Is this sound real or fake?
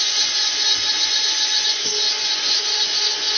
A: fake